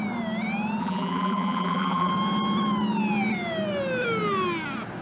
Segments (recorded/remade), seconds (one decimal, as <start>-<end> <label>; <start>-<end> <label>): 0.0-0.8 recorded; 0.8-2.1 remade; 2.1-5.0 recorded